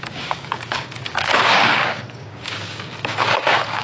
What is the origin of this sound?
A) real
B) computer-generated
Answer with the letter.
B